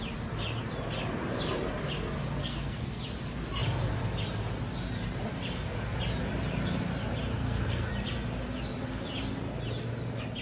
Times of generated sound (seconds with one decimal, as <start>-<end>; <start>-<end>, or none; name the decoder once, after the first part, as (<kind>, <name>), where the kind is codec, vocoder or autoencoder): 2.4-3.0 (codec, SNAC); 7.3-7.9